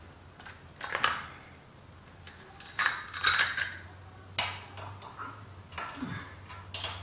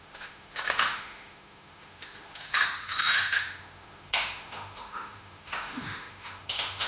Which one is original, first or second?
first